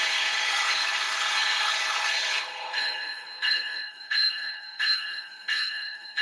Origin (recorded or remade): remade